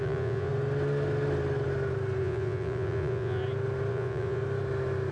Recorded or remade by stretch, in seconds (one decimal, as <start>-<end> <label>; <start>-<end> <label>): 0.0-0.5 remade; 0.5-2.2 recorded; 2.2-3.4 remade; 3.4-3.9 recorded; 3.9-4.4 remade; 4.4-5.1 recorded